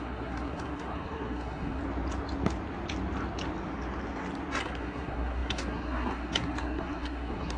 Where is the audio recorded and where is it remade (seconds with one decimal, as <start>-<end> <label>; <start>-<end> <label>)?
0.0-1.8 remade; 1.8-4.6 recorded; 4.6-7.6 remade